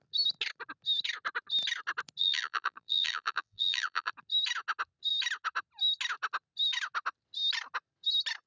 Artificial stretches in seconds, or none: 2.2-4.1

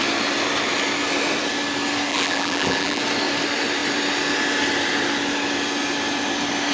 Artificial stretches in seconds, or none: 2.1-3.0

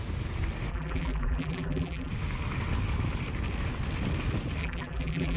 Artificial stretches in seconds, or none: 0.7-2.1; 4.6-5.4

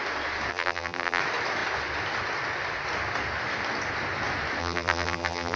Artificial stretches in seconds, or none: 0.5-1.2; 4.6-5.6

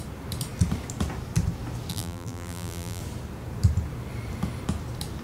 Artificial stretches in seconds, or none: 1.9-3.0

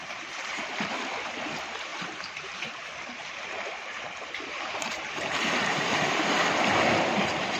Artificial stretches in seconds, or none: 0.0-0.9; 1.9-6.3

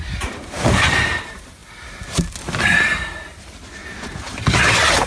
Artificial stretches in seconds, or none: 0.0-1.6; 2.6-3.8; 4.6-5.1

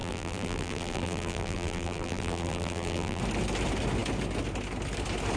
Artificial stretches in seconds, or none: 0.0-3.2